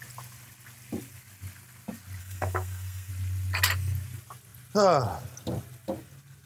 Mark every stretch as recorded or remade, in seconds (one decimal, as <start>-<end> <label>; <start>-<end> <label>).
0.0-2.2 recorded; 2.2-3.1 remade; 3.1-6.5 recorded